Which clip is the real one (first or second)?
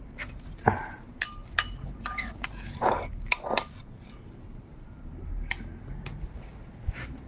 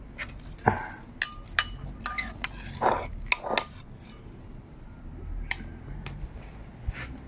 second